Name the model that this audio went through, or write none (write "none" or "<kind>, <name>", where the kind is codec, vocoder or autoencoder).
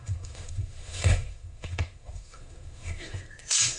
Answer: codec, SNAC